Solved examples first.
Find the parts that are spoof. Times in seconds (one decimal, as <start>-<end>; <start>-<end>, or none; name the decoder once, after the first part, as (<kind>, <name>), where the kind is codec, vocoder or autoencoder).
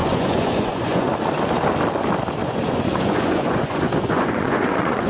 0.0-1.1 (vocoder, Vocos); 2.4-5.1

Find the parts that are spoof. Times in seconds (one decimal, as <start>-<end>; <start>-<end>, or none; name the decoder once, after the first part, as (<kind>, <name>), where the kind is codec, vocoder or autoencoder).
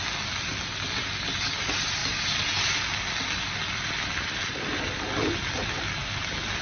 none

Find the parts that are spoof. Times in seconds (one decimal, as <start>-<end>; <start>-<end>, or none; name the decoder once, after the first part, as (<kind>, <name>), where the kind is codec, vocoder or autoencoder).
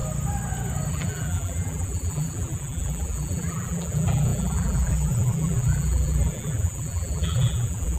0.9-8.0 (vocoder, BigVGAN v2)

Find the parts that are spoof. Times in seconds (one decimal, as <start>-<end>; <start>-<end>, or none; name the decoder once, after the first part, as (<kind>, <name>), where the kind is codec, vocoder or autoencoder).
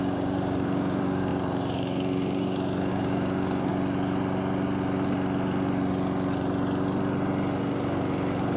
0.0-3.7 (codec, DAC); 7.6-8.6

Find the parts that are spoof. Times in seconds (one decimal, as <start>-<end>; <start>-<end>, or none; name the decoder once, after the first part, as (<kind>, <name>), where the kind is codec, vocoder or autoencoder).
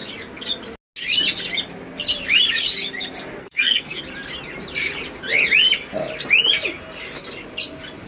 3.4-4.0 (codec, SNAC)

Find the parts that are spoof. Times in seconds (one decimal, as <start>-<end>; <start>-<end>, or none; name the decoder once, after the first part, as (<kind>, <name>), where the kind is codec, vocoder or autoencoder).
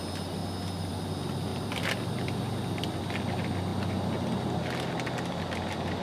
1.5-3.0 (vocoder, BigVGAN v2)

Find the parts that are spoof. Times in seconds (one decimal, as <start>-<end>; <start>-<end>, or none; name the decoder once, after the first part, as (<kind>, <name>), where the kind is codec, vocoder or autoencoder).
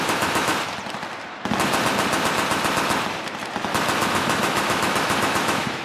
0.0-0.5 (autoencoder, DAC-VAE); 4.0-5.8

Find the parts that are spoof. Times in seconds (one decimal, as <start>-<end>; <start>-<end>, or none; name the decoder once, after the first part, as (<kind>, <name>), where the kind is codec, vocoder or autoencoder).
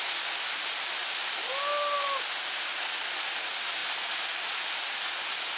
none